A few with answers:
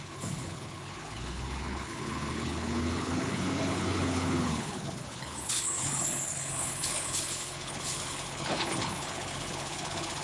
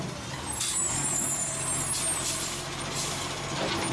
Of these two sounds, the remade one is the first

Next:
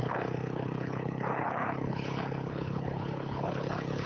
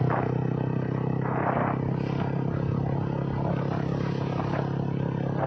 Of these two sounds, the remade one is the first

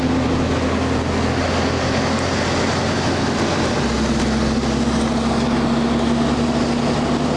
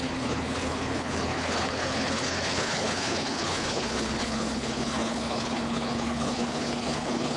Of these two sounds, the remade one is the second